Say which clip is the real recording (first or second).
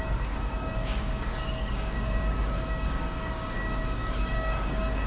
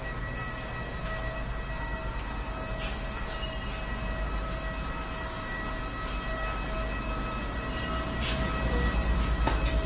second